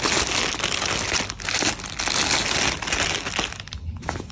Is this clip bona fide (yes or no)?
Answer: yes